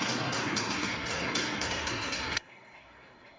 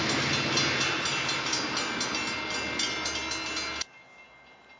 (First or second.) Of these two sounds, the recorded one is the second